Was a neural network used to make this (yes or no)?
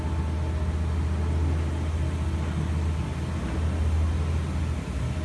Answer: no